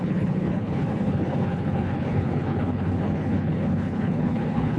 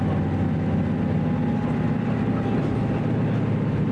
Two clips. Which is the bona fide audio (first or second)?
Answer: second